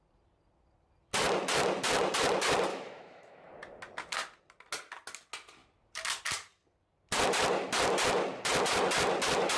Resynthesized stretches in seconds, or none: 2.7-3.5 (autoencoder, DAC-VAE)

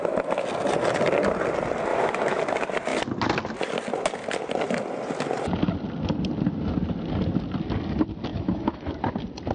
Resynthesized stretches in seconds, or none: 1.9-2.4 (autoencoder, DAC-VAE); 8.3-8.9

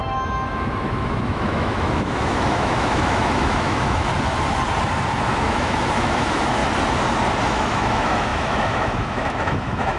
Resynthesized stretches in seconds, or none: 0.0-4.1 (autoencoder, DAC-VAE); 5.3-6.6; 7.4-10.0

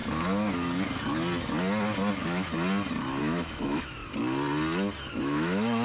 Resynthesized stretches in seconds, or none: 2.1-2.5 (autoencoder, DAC-VAE); 3.2-4.0; 5.1-5.8